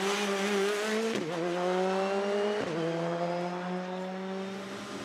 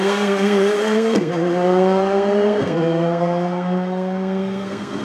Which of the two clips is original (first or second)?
first